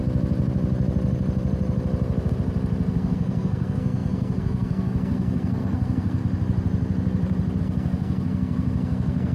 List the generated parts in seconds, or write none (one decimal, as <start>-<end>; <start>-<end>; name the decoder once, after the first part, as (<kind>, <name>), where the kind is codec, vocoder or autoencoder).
2.9-6.2 (codec, SNAC); 7.6-9.3